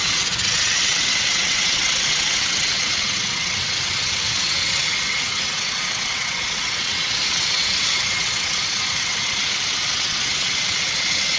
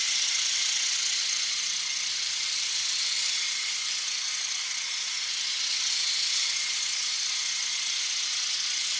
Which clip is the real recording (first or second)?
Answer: second